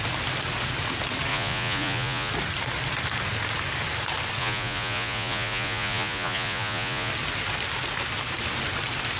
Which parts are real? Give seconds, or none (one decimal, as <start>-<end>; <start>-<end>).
0.0-1.3; 2.3-4.4; 7.1-9.2